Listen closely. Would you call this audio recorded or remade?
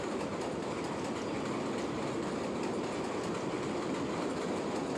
recorded